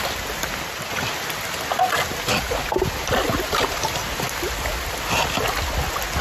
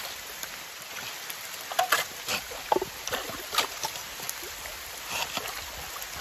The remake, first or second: second